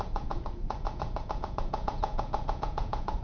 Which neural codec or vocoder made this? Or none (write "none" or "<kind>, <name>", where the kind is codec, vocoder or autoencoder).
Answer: vocoder, Vocos